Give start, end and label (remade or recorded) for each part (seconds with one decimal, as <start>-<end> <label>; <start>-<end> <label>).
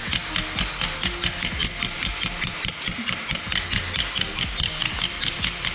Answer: 0.0-5.7 recorded